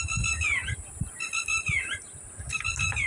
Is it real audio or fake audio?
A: fake